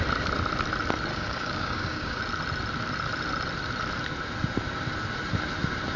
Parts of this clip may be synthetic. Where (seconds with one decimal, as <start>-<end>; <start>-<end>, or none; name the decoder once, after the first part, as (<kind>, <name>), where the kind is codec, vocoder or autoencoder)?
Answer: 1.1-2.2 (codec, DAC)